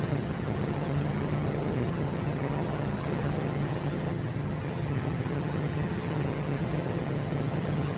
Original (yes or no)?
no